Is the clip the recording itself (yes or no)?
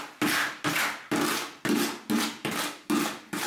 yes